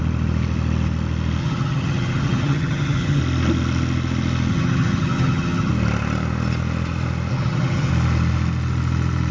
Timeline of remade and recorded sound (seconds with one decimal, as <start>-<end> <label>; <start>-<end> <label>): 0.0-1.4 recorded; 1.4-3.2 remade; 3.2-4.5 recorded; 4.5-5.7 remade; 5.7-7.3 recorded; 7.3-7.9 remade; 7.9-9.3 recorded